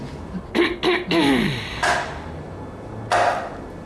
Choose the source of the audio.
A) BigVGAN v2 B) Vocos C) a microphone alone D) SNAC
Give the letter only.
C